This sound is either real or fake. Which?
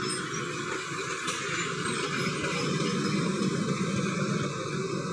real